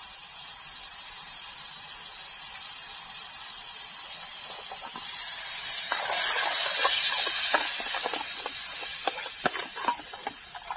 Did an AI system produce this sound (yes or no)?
no